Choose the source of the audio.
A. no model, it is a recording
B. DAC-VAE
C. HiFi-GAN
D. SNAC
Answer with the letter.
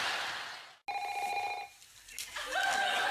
A